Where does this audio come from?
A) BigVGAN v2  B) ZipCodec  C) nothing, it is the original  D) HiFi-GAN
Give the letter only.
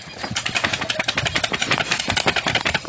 C